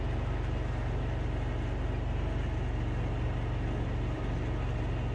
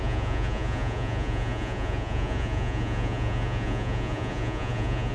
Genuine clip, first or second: first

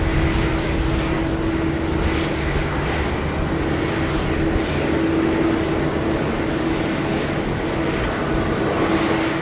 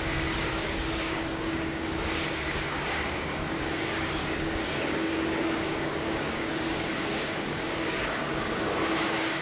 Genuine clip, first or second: first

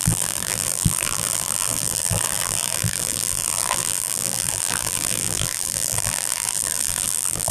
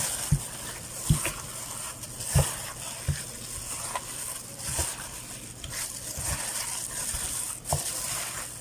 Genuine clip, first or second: second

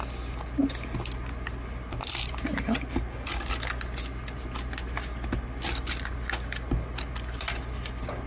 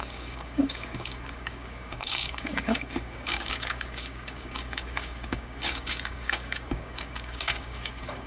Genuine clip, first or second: first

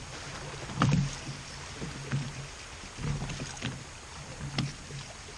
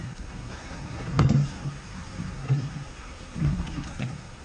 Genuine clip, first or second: first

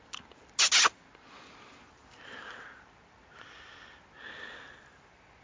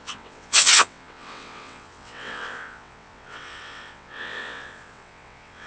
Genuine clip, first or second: first